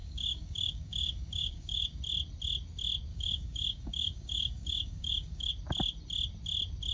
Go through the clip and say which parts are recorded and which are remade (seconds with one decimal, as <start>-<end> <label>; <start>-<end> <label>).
0.0-2.0 remade; 2.0-3.1 recorded; 3.1-5.5 remade; 5.5-6.9 recorded